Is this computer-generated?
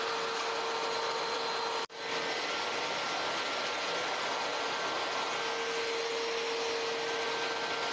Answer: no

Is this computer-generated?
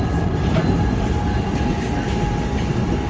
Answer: no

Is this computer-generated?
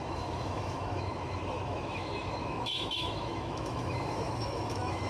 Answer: yes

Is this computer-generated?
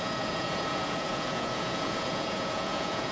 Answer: yes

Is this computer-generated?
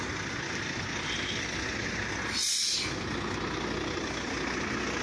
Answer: no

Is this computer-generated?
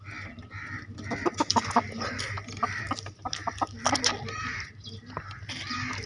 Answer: no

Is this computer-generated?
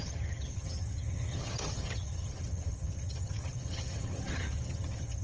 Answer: yes